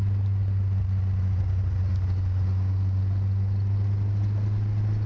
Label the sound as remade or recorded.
recorded